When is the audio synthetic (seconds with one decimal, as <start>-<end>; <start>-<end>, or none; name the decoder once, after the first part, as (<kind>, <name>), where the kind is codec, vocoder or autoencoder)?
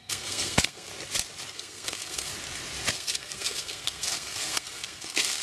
0.0-0.9 (codec, SNAC); 1.5-2.3; 2.9-5.4